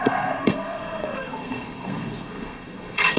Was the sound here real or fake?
fake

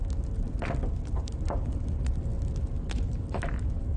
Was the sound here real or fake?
real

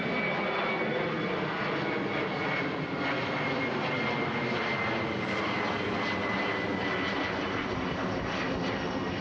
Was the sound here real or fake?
real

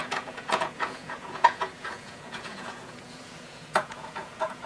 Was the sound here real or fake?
fake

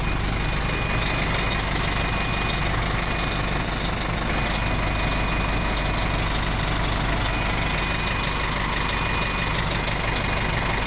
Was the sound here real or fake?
real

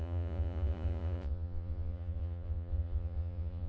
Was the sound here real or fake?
fake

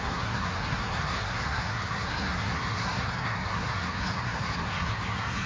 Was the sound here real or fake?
fake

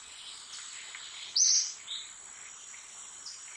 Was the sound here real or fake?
real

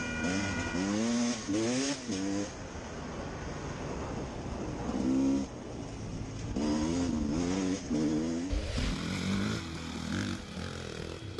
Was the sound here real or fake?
real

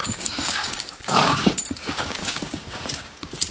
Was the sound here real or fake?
fake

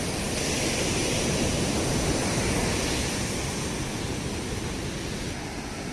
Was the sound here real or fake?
real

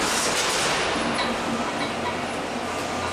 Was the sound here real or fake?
real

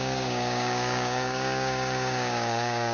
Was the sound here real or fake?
fake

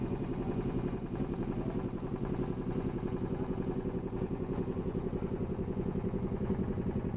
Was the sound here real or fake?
fake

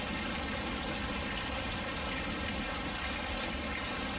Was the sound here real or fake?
real